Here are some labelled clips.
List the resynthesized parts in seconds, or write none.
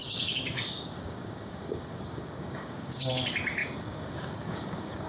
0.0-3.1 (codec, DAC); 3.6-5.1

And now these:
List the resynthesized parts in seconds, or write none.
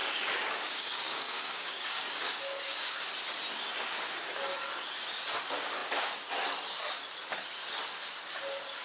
0.0-2.9 (codec, DAC)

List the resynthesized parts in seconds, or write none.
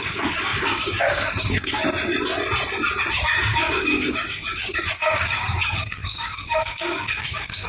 0.0-1.8 (codec, DAC); 3.1-7.7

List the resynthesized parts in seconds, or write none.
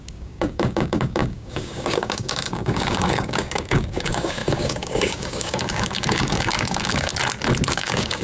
0.0-7.1 (codec, DAC); 7.7-8.2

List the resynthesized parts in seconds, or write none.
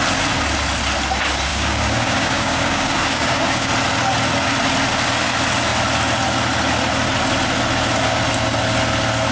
1.5-3.7 (codec, DAC)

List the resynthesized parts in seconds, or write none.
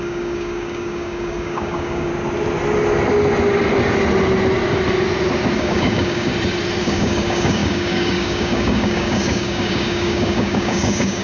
0.0-2.1 (codec, DAC); 5.6-6.3; 6.8-11.2